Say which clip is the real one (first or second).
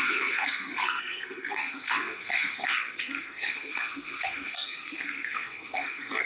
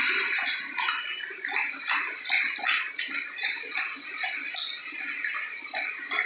second